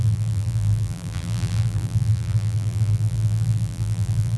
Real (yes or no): no